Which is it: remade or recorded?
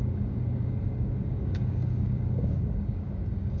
remade